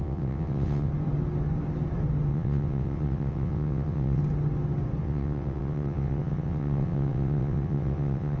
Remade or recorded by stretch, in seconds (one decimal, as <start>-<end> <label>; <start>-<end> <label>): 0.0-0.9 remade; 0.9-2.3 recorded; 2.3-4.2 remade; 4.2-5.0 recorded; 5.0-8.4 remade